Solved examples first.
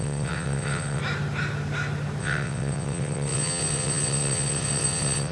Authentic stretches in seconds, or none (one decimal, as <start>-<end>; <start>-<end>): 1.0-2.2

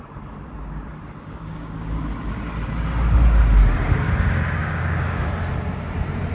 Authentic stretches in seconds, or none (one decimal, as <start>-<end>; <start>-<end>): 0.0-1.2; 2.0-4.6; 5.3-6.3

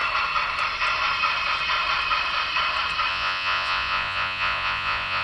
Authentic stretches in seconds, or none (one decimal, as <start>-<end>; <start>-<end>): 0.0-3.1

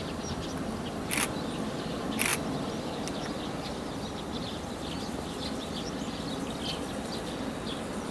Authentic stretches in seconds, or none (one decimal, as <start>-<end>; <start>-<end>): 0.0-8.1